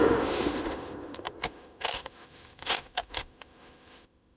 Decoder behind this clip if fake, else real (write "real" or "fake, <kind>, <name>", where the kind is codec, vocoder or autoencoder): fake, autoencoder, DAC-VAE